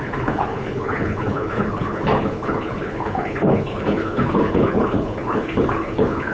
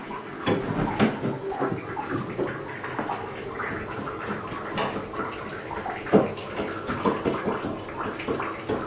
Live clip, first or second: second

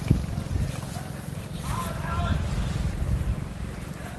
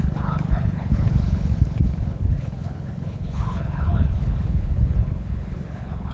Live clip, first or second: first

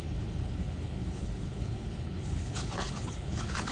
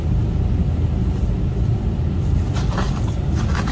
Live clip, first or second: second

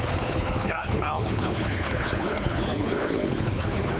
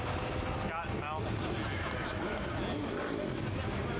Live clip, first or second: second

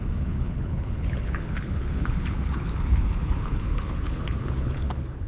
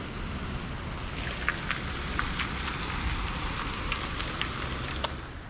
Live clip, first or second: second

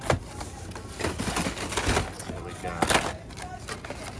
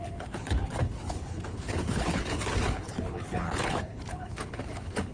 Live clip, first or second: first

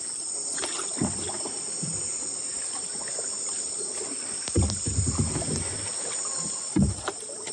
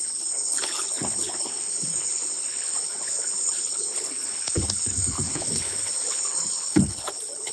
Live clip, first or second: first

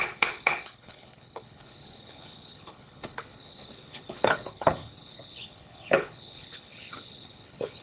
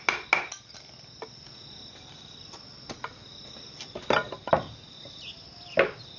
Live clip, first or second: second